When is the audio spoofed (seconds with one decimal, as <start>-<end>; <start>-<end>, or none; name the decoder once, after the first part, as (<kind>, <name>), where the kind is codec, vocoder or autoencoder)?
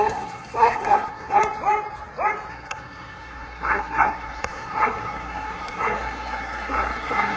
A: 0.0-1.4 (codec, SNAC); 2.5-7.4